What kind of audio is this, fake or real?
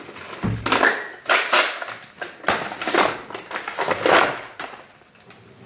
real